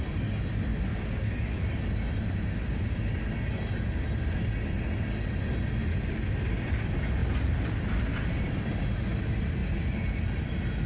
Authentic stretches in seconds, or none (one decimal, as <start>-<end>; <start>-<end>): 0.0-10.9